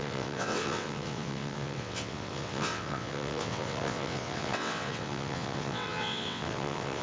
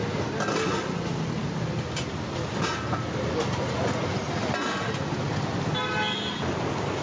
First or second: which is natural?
second